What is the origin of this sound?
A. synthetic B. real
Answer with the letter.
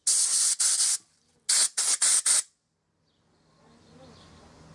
B